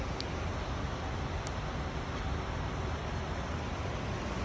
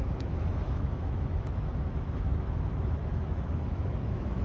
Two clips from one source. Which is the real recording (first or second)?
first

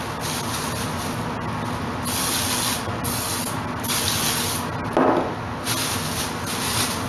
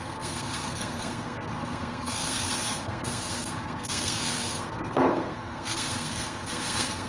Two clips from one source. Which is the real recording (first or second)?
first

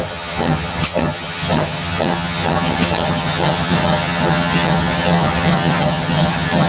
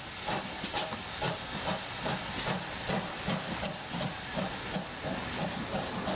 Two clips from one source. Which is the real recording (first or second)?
second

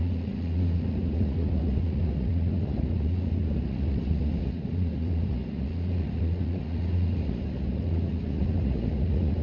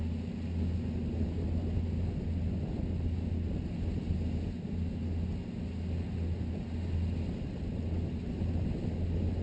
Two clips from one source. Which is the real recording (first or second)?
second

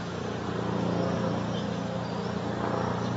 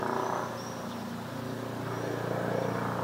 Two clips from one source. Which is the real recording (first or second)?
second